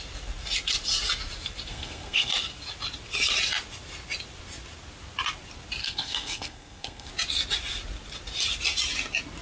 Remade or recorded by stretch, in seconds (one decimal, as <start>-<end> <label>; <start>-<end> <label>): 0.0-1.7 recorded; 1.7-2.3 remade; 2.3-5.8 recorded; 5.8-7.1 remade; 7.1-9.4 recorded